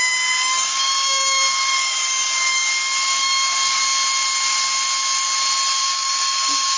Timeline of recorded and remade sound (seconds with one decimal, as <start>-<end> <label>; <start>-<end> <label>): 0.0-2.7 remade; 2.7-3.2 recorded; 3.2-3.8 remade; 3.8-5.8 recorded; 5.8-6.8 remade